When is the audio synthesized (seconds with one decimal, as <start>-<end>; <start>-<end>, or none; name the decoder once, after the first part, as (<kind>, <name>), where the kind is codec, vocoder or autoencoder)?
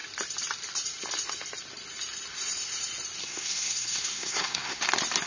3.2-4.8 (codec, SNAC)